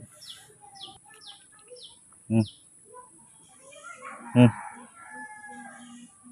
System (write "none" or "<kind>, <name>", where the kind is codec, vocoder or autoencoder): none